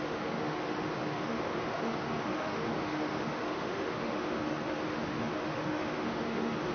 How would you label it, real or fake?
fake